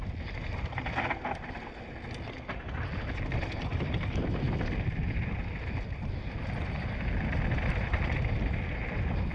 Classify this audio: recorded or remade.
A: recorded